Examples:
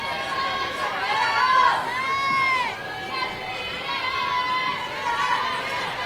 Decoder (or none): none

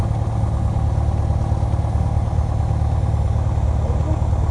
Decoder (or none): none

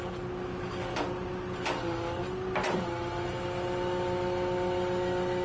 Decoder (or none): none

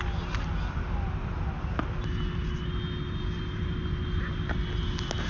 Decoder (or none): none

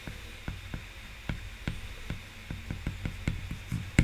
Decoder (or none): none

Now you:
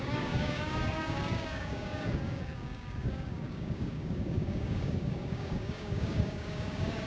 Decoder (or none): codec, DAC